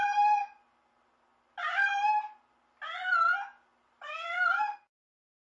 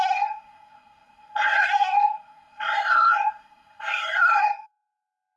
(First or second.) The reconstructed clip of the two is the second